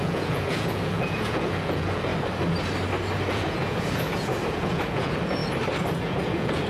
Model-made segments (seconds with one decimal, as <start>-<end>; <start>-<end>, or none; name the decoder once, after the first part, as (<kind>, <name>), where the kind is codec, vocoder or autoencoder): 0.0-2.1 (vocoder, Vocos); 3.3-5.4; 6.0-6.7